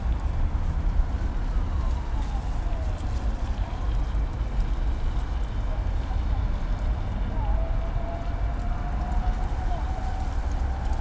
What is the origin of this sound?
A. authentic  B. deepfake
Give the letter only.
A